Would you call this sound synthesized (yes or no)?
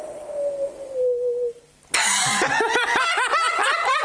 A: no